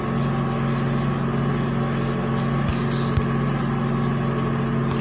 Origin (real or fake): real